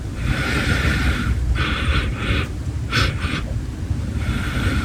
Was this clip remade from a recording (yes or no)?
yes